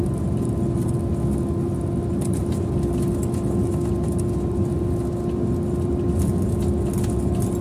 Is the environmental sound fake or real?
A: real